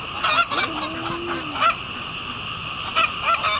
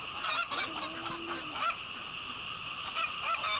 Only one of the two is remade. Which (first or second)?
second